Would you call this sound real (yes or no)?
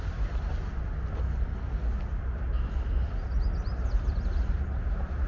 yes